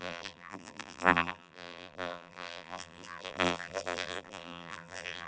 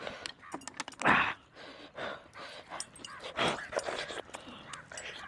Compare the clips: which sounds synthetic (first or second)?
first